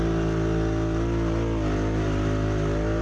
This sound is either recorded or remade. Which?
recorded